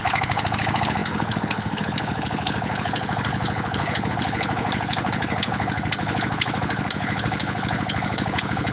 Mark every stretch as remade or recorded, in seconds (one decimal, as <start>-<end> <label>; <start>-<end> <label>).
0.0-8.7 remade